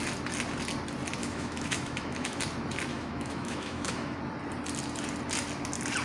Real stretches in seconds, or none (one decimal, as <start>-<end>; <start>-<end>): 0.0-1.2; 2.4-2.9; 4.2-6.0